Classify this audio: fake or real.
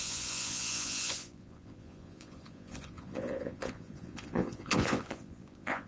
fake